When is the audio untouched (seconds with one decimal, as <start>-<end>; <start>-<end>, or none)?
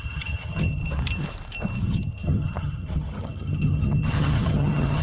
0.8-1.8